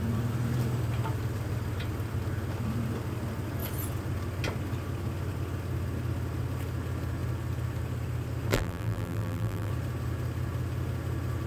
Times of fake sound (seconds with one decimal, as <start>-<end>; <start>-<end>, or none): 8.5-9.7

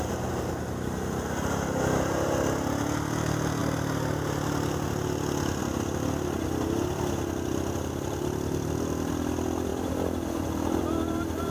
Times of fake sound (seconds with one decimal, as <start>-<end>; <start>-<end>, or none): none

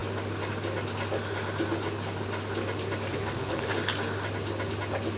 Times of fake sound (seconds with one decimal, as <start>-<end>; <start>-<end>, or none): 3.1-3.7

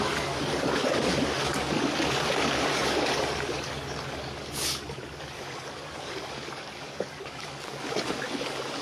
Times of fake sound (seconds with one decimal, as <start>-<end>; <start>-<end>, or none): 0.0-8.8

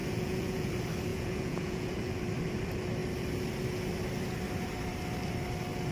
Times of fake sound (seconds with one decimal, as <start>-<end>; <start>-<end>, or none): 0.0-0.7; 1.1-2.2

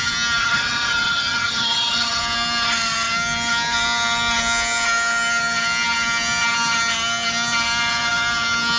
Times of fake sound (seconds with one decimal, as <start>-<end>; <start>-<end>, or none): 0.4-2.2

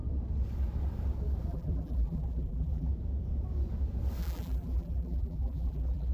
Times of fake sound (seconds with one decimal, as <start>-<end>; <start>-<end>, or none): 1.5-2.9; 4.2-6.1